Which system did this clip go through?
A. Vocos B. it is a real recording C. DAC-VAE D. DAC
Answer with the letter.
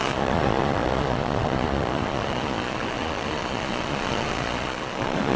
A